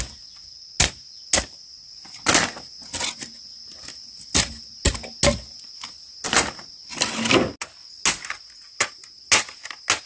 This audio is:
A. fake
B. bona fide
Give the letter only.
B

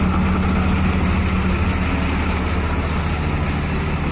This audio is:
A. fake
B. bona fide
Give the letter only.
B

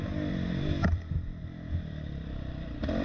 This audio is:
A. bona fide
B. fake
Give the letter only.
B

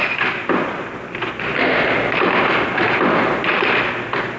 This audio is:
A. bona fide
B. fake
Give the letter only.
A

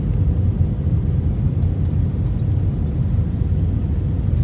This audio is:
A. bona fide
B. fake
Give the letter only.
A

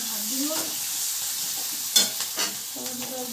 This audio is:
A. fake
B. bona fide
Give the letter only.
B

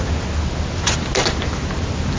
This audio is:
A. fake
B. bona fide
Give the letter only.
B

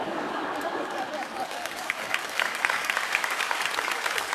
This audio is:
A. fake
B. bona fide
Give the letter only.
A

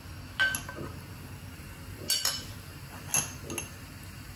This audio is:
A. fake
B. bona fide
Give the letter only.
B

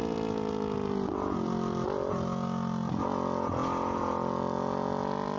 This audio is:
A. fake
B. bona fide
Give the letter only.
B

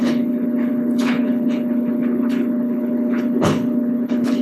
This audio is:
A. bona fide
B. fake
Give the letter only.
B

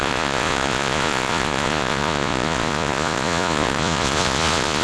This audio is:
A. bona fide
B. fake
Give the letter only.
B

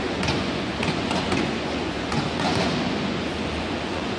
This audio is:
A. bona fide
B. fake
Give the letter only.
B